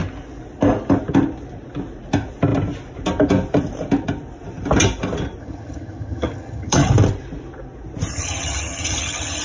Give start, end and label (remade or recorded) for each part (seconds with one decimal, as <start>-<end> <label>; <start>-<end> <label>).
0.0-5.4 recorded; 5.4-6.9 remade; 6.9-8.1 recorded; 8.1-9.4 remade